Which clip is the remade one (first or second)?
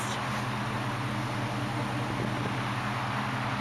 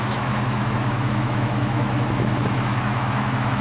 second